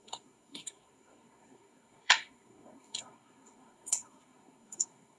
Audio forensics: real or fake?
fake